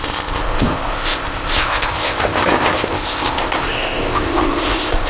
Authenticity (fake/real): fake